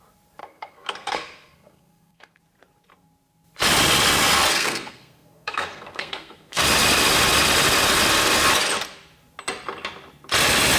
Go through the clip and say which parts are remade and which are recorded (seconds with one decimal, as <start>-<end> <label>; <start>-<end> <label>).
0.0-0.4 recorded; 0.4-2.4 remade; 2.4-4.5 recorded; 4.5-6.6 remade; 6.6-10.8 recorded